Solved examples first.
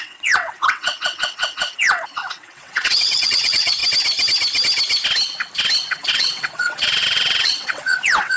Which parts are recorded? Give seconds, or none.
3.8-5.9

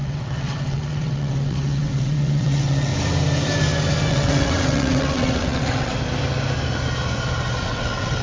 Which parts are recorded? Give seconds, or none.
2.9-4.1; 5.9-7.6